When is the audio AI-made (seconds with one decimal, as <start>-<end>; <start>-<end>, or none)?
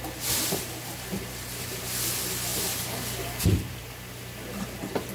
none